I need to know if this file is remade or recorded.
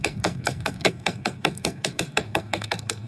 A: remade